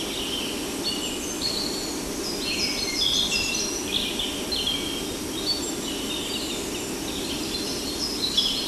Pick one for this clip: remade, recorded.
recorded